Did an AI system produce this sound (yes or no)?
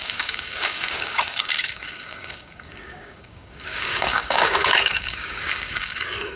yes